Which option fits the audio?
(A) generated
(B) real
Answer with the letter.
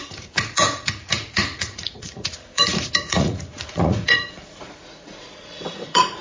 A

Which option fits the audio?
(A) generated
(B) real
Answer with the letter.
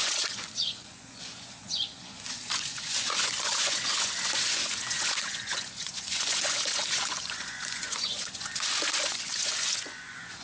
A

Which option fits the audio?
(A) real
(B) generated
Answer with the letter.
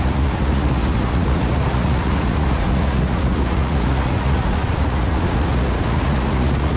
B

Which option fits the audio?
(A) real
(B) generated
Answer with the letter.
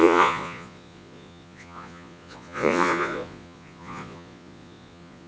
B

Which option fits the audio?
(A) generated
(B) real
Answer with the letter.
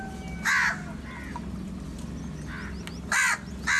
B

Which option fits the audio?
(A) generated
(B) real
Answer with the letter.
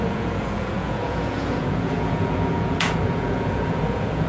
A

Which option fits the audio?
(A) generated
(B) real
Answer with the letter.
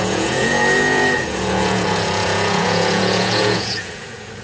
A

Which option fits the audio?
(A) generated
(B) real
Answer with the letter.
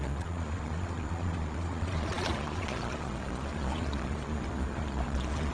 A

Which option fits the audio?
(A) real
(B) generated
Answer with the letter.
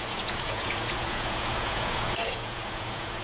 B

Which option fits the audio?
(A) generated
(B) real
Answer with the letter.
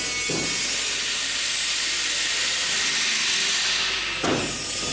B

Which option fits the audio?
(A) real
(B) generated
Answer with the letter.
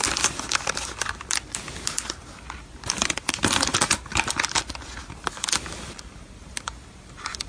A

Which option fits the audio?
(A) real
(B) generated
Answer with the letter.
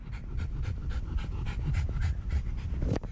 A